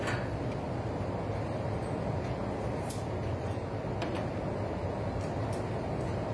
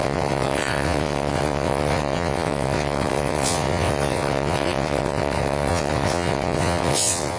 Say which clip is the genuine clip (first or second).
first